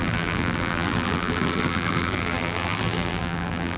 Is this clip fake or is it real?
fake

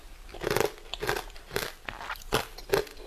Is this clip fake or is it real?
real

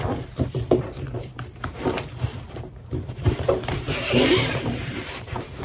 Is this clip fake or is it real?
fake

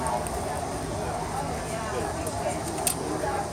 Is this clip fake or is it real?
real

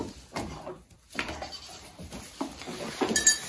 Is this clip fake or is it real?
real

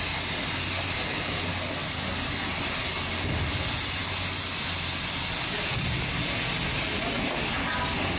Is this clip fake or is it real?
real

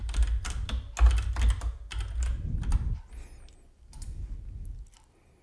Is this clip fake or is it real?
real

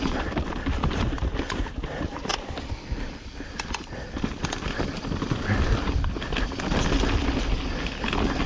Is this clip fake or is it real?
real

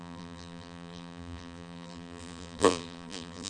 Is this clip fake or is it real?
fake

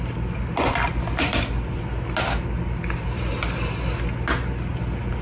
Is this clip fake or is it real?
real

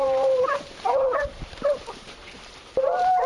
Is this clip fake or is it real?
fake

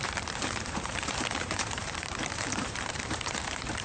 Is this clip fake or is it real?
fake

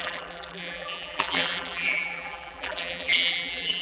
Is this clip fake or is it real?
fake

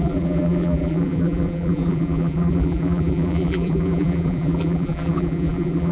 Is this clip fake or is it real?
fake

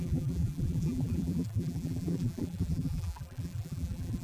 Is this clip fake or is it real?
fake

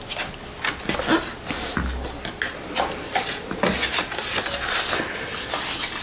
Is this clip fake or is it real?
real